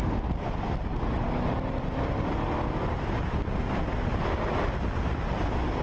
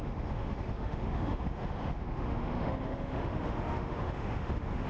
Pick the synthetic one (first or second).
second